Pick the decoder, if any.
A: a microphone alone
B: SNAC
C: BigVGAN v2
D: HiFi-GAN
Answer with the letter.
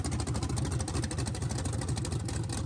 A